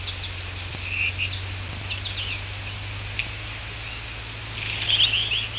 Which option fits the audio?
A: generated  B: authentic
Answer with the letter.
B